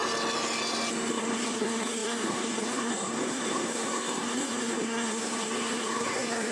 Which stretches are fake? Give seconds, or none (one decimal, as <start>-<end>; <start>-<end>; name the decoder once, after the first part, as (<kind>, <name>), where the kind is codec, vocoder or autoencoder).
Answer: 1.1-6.5 (codec, SNAC)